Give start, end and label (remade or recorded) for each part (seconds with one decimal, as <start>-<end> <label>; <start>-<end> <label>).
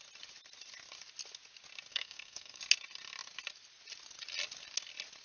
0.0-1.9 recorded; 1.9-2.6 remade; 2.6-5.2 recorded